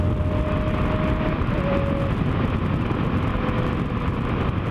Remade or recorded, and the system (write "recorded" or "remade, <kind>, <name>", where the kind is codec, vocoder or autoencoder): recorded